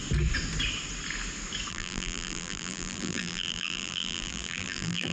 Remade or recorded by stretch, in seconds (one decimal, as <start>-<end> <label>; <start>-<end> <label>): 0.0-1.7 recorded; 1.7-5.1 remade